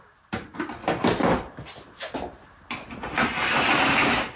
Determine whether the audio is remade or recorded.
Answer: recorded